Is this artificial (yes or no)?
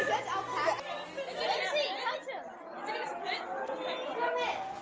no